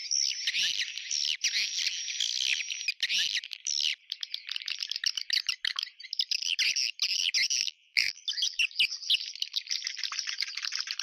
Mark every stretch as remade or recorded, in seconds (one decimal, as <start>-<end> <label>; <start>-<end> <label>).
0.0-7.6 recorded; 7.6-8.2 remade; 8.2-11.0 recorded